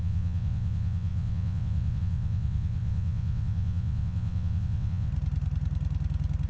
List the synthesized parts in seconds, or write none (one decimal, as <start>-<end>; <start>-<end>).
0.0-5.1